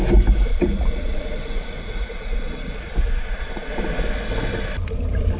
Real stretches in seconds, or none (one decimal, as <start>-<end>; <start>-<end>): 0.0-0.5; 3.7-5.4